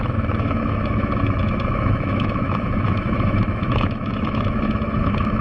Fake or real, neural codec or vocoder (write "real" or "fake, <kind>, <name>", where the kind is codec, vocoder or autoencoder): fake, autoencoder, DAC-VAE